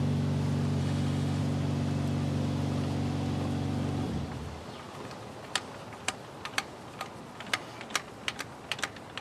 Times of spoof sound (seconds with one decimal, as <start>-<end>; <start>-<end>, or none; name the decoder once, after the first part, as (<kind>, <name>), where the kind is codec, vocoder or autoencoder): 0.8-1.4 (autoencoder, DAC-VAE)